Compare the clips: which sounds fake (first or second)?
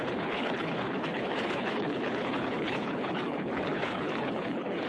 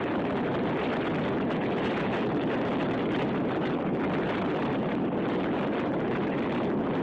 first